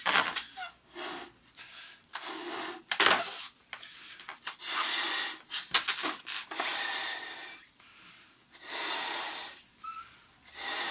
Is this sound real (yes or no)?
yes